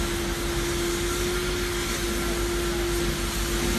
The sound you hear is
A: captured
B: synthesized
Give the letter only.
A